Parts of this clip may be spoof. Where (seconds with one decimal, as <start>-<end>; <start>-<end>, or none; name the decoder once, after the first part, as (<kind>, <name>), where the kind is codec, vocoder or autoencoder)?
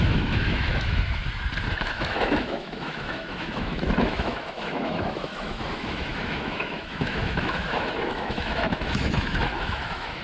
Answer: 0.0-1.2 (autoencoder, DAC-VAE); 1.8-10.2